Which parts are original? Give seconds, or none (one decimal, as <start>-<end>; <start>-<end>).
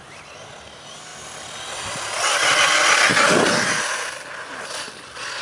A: 0.0-5.4